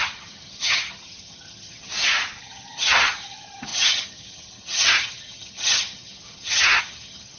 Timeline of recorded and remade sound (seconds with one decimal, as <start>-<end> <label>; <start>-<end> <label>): 0.0-1.9 remade; 1.9-2.4 recorded; 2.4-7.4 remade